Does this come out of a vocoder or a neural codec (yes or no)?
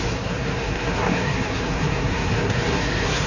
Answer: yes